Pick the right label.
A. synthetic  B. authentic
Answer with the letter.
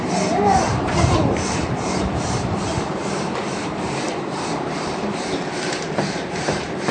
A